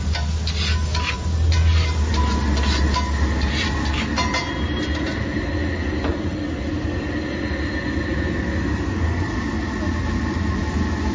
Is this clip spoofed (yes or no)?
no